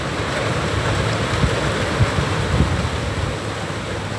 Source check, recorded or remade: recorded